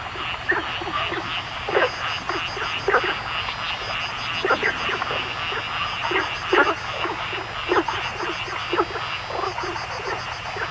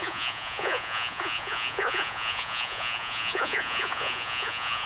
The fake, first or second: second